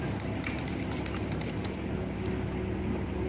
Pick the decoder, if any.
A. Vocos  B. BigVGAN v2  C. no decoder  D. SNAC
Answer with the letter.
C